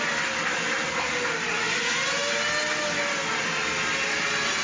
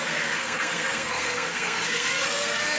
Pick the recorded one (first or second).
first